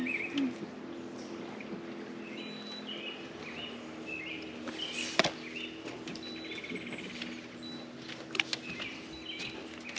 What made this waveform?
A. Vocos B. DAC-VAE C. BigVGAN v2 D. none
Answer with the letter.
D